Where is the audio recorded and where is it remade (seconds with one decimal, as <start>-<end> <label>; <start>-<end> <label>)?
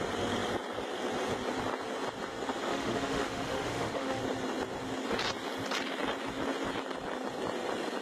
0.0-2.7 recorded; 2.7-4.2 remade; 4.2-8.0 recorded